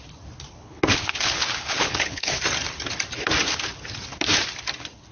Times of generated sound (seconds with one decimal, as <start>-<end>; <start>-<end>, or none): 0.5-2.4